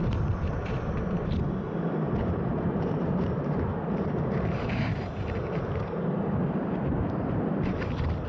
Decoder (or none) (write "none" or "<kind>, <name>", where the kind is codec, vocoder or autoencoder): vocoder, BigVGAN v2